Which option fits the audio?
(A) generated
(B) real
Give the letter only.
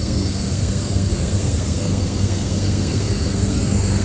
A